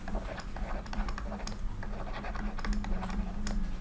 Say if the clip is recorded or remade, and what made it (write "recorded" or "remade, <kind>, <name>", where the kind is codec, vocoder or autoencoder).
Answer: recorded